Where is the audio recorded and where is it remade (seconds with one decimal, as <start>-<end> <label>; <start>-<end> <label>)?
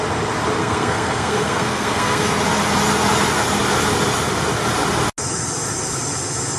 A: 0.0-0.6 recorded; 0.6-2.3 remade; 2.3-6.6 recorded